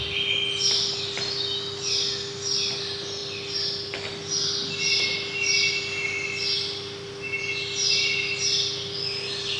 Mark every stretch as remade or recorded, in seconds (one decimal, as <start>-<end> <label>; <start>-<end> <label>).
0.0-9.6 recorded